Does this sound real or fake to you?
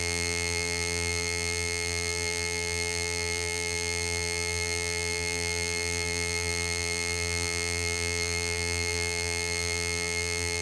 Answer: fake